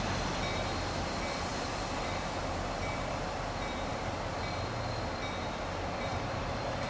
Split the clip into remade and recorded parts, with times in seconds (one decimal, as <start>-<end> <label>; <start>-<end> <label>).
0.0-1.5 recorded; 1.5-2.4 remade; 2.4-6.1 recorded; 6.1-6.9 remade